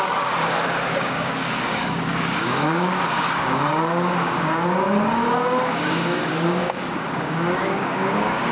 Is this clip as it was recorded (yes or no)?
no